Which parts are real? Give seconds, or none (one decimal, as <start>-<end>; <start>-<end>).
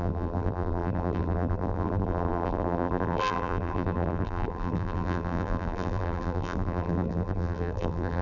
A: none